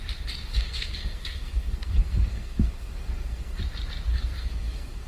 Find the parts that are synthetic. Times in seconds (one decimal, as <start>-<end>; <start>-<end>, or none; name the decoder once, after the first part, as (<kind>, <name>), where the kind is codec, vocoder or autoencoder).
0.5-3.6 (codec, SNAC); 4.1-5.1